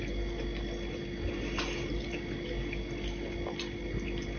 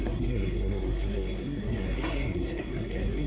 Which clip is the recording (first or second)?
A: first